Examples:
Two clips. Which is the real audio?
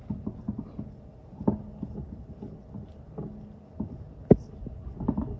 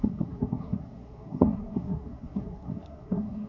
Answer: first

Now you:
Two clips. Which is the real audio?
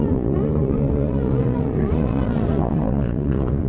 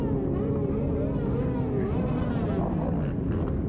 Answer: second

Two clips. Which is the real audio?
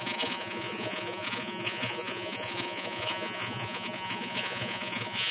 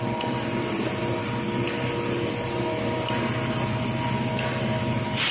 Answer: second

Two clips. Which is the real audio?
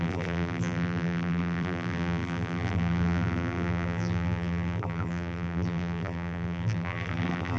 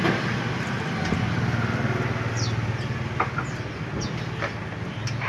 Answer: second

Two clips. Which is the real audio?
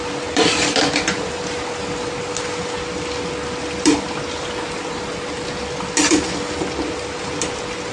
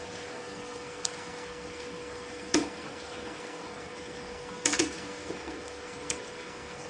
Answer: first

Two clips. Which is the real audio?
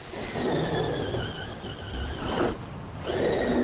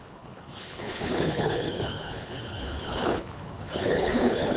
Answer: first